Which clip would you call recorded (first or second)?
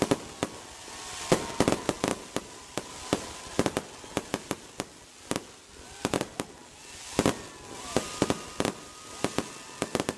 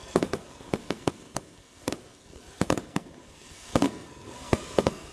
first